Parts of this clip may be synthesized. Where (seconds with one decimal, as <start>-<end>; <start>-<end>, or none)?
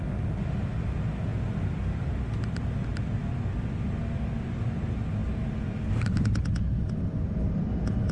none